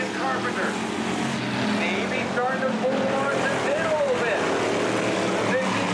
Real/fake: real